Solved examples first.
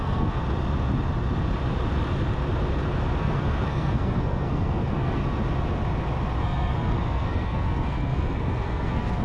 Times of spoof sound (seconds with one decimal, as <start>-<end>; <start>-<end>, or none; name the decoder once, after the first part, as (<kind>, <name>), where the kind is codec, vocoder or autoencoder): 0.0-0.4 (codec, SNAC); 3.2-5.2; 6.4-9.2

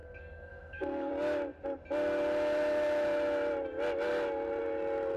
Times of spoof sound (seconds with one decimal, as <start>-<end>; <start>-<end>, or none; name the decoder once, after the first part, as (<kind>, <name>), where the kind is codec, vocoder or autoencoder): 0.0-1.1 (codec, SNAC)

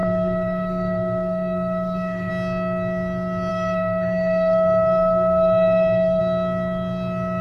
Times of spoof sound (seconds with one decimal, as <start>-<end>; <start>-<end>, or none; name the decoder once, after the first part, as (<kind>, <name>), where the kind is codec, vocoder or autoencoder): 0.0-2.3 (codec, SNAC); 3.5-6.2

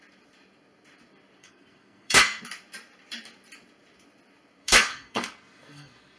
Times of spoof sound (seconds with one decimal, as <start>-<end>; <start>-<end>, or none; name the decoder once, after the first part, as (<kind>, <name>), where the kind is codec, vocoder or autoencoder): 1.4-2.4 (codec, SNAC); 4.6-6.2

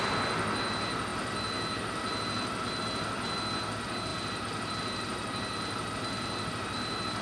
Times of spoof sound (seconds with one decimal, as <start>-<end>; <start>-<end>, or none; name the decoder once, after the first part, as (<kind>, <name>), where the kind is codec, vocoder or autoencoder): none

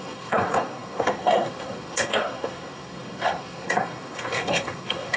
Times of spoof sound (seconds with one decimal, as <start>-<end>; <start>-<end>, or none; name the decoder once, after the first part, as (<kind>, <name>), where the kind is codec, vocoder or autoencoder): 0.0-5.2 (codec, SNAC)

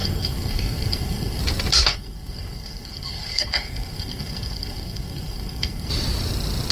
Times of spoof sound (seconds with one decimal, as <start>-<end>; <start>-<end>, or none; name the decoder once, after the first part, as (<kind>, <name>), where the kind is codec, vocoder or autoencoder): 0.0-1.4 (codec, SNAC); 1.9-5.9

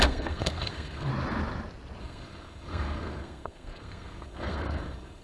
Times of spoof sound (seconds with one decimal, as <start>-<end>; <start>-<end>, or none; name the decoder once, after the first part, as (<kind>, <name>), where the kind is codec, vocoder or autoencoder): 0.0-1.1 (codec, SNAC); 2.0-5.2